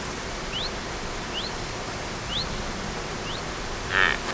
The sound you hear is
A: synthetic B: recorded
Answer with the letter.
A